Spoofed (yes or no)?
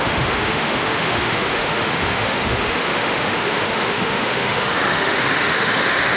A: yes